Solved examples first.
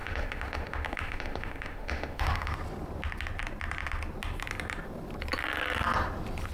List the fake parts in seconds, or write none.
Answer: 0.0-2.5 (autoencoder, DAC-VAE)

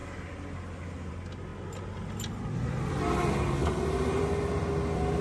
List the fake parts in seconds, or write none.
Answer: none